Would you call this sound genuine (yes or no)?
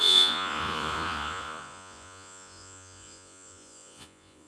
no